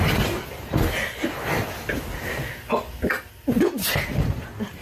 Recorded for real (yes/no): yes